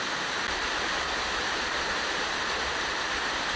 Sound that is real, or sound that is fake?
real